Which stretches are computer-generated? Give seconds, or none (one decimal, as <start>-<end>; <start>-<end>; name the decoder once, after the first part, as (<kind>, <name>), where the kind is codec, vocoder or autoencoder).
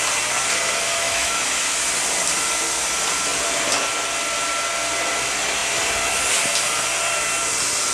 1.0-1.9 (autoencoder, DAC-VAE)